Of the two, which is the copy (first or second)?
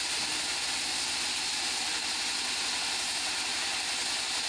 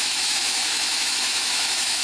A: second